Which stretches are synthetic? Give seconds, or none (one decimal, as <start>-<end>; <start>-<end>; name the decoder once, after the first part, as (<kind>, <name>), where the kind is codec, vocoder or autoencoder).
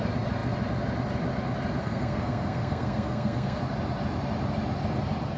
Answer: 1.8-3.6 (codec, SNAC)